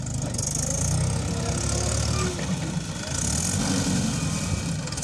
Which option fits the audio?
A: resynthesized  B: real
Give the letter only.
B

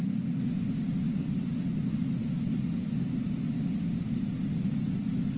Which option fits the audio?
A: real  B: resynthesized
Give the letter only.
A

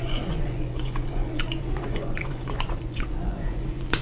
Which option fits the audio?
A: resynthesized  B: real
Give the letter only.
A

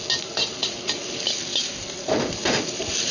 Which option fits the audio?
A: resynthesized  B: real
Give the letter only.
B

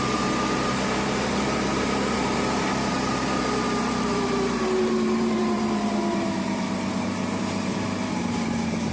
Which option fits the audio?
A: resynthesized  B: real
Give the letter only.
A